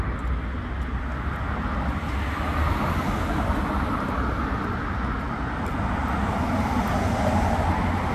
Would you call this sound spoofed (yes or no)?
no